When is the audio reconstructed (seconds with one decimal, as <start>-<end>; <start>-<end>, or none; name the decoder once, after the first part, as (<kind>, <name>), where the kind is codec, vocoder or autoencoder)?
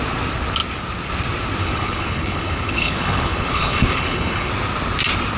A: 1.6-4.5 (codec, HILCodec)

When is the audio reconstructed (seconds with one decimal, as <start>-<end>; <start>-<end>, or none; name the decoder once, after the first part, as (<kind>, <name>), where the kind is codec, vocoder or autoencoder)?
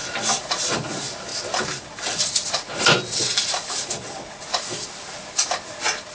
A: none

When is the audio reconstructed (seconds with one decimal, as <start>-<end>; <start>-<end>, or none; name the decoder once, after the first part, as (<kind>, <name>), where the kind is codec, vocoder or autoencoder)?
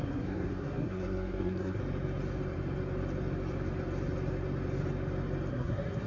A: 0.0-1.8 (codec, SNAC); 5.5-6.1